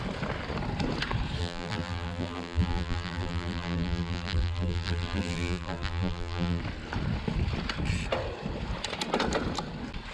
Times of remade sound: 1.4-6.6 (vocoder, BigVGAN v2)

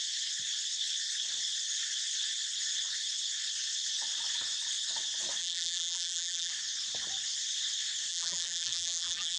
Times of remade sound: 5.4-6.5 (vocoder, BigVGAN v2); 8.1-9.4

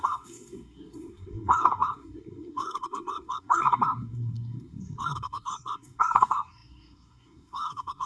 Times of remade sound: 0.0-8.1 (codec, SNAC)

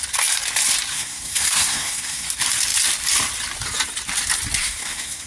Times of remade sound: 0.9-2.3 (codec, SNAC); 4.6-5.3

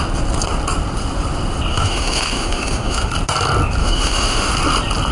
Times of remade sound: 1.7-3.1 (autoencoder, DAC-VAE); 3.8-4.5